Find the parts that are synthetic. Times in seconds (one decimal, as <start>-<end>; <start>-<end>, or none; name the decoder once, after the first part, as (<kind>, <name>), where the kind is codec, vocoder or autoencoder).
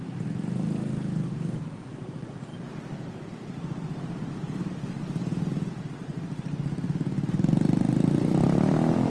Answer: 2.5-4.3 (vocoder, BigVGAN v2)